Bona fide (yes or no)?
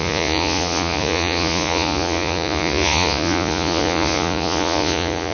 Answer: no